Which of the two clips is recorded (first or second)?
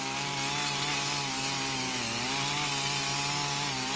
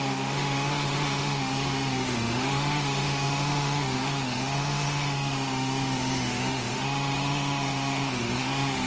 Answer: first